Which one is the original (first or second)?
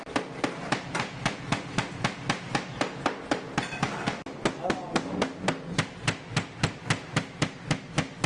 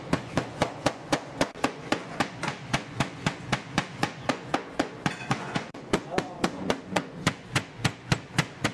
first